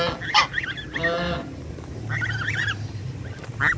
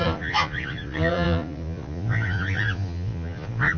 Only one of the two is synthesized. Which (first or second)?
second